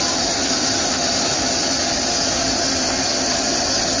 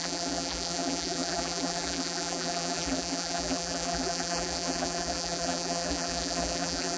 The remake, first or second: second